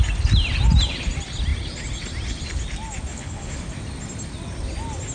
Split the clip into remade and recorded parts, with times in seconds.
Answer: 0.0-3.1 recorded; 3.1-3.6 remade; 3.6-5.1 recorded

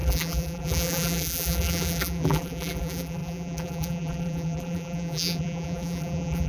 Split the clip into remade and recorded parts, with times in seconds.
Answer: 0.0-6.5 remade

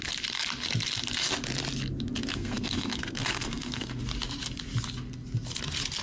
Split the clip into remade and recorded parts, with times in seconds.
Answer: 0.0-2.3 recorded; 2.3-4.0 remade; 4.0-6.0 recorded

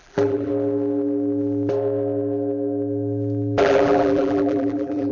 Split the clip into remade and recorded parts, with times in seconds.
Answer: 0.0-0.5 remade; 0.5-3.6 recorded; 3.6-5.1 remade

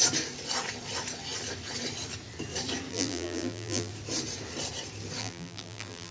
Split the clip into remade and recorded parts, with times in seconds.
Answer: 0.0-2.9 recorded; 2.9-3.9 remade; 3.9-5.2 recorded; 5.2-6.1 remade